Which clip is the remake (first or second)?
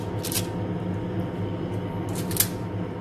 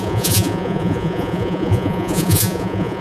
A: second